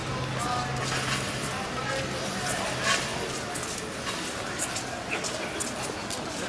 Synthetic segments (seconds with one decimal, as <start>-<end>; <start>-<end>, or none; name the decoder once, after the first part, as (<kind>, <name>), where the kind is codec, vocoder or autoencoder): none